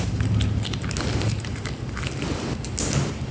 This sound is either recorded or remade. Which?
recorded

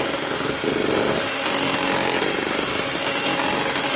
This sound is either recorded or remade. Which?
recorded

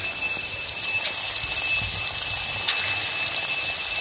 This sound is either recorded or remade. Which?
recorded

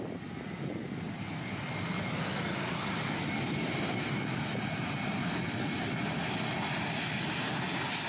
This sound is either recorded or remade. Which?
recorded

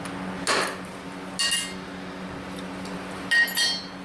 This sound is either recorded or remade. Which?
recorded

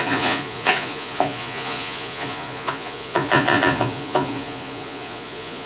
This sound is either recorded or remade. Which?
remade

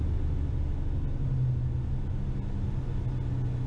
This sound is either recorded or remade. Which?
recorded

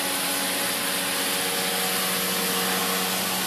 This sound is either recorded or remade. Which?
recorded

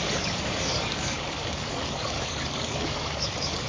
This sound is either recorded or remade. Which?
remade